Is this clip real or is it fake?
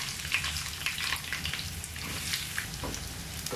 real